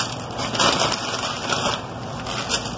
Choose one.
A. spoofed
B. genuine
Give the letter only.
B